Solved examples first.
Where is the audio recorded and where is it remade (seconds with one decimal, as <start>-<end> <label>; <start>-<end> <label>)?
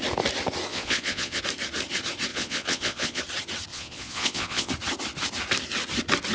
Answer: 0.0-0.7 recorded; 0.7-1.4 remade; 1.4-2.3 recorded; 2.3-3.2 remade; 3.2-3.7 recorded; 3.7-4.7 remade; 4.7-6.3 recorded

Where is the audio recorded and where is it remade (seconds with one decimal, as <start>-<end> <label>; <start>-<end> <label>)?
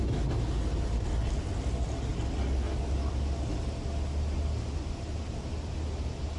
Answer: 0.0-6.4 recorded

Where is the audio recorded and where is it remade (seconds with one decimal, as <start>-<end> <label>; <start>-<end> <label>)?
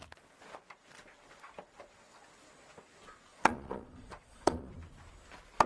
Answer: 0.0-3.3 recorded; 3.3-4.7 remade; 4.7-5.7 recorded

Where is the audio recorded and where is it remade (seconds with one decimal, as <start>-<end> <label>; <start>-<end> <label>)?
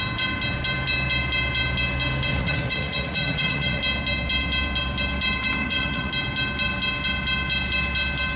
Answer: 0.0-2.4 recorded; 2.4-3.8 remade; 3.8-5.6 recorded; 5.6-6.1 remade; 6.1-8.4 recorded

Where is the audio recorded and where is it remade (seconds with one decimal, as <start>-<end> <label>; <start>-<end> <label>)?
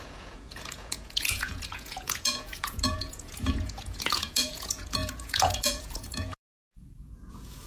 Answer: 0.0-7.7 remade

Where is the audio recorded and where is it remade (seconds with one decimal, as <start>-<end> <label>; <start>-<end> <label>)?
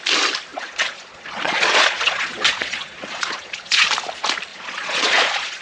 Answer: 0.0-0.5 recorded; 0.5-3.9 remade; 3.9-4.5 recorded; 4.5-5.6 remade